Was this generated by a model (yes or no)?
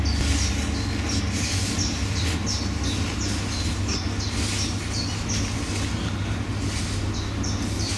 no